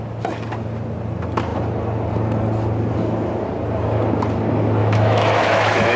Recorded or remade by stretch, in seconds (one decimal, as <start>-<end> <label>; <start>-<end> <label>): 0.0-4.8 recorded; 4.8-6.0 remade